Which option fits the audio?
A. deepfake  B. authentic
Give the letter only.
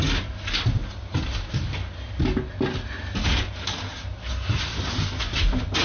B